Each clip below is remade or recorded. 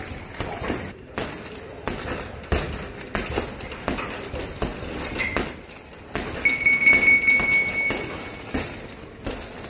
recorded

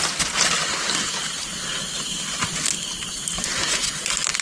recorded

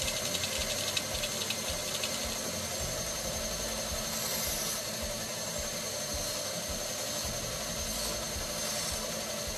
recorded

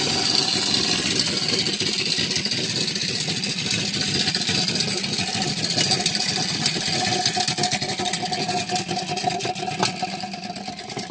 recorded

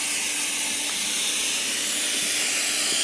recorded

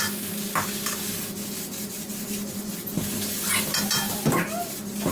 recorded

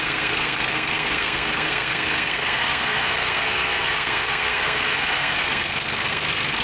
remade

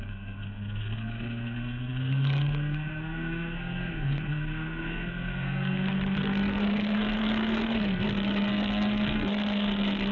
remade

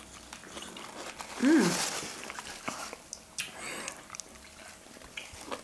recorded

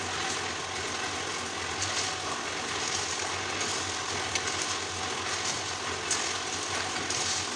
recorded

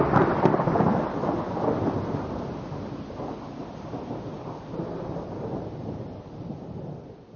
recorded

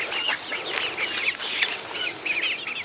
recorded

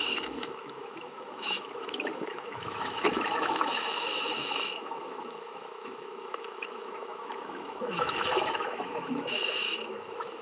remade